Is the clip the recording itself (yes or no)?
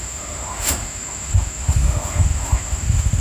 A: no